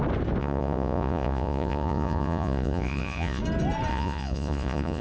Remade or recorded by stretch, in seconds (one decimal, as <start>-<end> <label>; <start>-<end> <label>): 0.0-0.4 recorded; 0.4-3.4 remade; 3.4-3.9 recorded; 3.9-5.0 remade